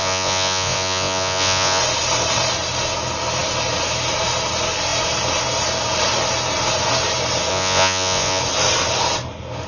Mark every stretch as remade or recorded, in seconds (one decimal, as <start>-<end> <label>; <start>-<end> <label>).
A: 0.0-1.8 remade; 1.8-7.5 recorded; 7.5-8.4 remade; 8.4-9.7 recorded